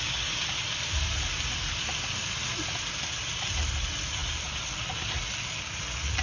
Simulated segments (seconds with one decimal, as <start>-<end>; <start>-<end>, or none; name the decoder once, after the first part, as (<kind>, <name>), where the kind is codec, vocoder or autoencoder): none

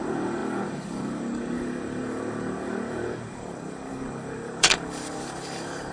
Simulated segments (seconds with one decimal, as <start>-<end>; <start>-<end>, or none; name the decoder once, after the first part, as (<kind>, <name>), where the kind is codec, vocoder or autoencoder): 0.0-5.9 (codec, DAC)

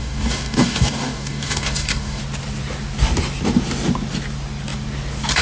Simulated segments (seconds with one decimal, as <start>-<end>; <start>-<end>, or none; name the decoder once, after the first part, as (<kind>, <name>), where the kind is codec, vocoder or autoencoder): 0.0-2.2 (codec, DAC)

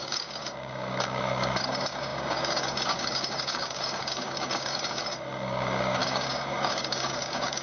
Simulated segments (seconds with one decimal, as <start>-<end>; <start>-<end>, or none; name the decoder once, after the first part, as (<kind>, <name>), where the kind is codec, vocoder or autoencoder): 0.0-7.6 (codec, DAC)